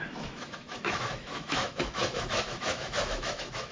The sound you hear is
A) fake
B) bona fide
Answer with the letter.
A